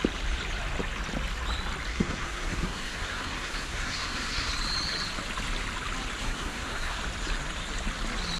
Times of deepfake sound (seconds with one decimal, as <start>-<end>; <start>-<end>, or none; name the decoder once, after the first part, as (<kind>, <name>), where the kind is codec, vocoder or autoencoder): 1.9-4.5 (codec, SNAC); 6.2-7.0

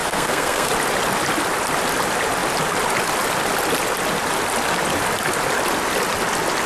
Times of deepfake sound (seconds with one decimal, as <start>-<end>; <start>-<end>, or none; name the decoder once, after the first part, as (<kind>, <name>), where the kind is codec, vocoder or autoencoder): 0.0-0.7 (codec, SNAC)

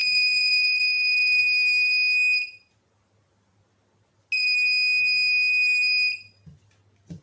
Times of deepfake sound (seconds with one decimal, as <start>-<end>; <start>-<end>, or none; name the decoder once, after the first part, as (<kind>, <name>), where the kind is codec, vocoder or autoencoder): 0.0-1.4 (codec, SNAC)

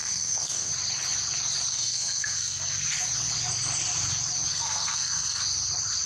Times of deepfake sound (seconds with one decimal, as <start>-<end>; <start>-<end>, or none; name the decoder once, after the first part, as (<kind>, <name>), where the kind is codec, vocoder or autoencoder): 0.0-0.7 (codec, SNAC); 1.7-2.8; 4.5-5.4